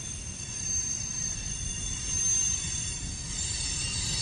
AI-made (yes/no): no